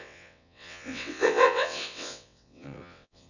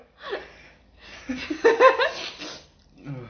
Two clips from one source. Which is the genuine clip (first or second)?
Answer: second